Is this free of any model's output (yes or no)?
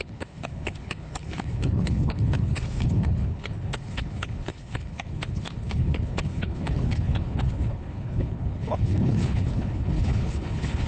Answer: no